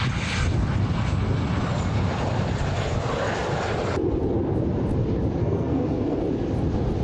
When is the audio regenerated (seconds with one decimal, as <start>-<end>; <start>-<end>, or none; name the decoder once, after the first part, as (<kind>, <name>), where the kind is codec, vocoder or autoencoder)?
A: 5.4-6.2 (codec, SNAC)